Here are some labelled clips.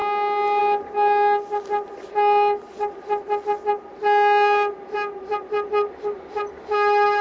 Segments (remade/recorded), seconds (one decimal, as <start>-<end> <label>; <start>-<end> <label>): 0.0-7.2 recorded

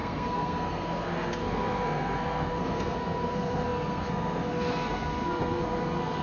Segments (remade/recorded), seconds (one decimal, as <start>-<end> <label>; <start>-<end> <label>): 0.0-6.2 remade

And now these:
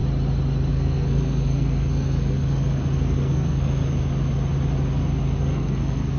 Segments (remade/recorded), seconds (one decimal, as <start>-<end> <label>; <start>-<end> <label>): 0.0-0.7 recorded; 0.7-4.0 remade; 4.0-5.4 recorded; 5.4-6.2 remade